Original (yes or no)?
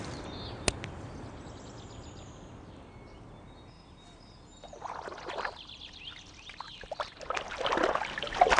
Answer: yes